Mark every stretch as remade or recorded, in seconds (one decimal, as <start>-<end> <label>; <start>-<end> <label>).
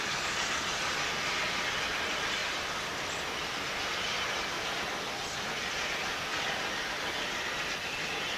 0.0-2.4 recorded; 2.4-3.7 remade; 3.7-8.4 recorded